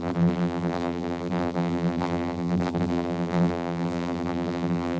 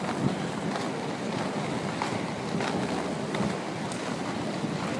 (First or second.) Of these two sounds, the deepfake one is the first